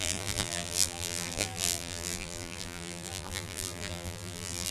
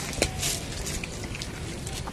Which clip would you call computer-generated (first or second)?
first